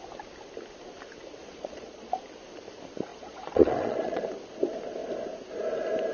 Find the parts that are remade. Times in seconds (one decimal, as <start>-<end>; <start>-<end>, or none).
1.4-2.2; 3.1-4.2